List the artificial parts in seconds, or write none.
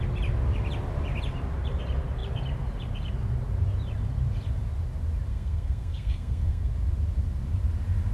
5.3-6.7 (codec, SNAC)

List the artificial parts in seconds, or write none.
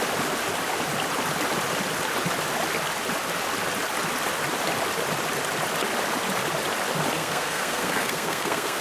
7.2-8.8 (codec, SNAC)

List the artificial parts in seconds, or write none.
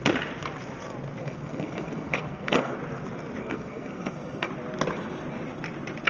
1.2-2.8 (codec, SNAC); 3.4-4.5